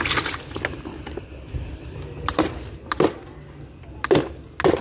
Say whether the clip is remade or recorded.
recorded